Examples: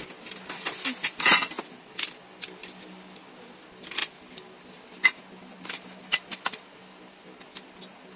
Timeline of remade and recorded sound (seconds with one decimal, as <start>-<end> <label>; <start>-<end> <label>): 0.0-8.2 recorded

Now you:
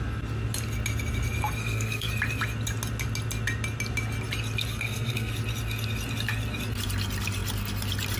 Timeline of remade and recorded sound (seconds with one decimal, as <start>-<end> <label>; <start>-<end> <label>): 0.0-1.6 recorded; 1.6-2.1 remade; 2.1-4.7 recorded; 4.7-5.3 remade; 5.3-8.2 recorded

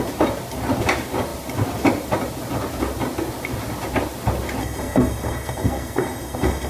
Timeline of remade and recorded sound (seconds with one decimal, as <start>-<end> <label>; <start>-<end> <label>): 0.0-4.6 recorded; 4.6-6.7 remade

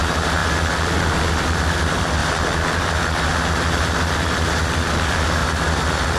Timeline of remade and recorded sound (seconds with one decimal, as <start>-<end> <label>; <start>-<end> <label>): 0.0-0.4 remade; 0.4-1.3 recorded; 1.3-3.3 remade; 3.3-3.8 recorded; 3.8-6.2 remade

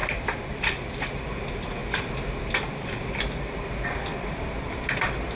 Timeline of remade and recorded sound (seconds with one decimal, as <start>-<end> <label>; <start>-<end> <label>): 0.0-5.4 remade

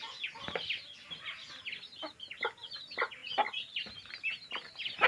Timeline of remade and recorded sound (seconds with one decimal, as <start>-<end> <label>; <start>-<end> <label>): 0.0-5.1 recorded

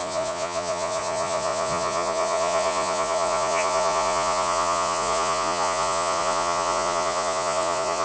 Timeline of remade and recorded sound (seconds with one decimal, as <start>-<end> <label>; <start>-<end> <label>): 0.0-8.0 remade

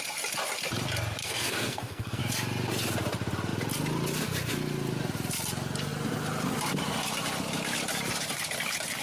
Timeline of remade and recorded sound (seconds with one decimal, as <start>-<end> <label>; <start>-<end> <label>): 0.0-1.2 recorded; 1.2-2.2 remade; 2.2-9.0 recorded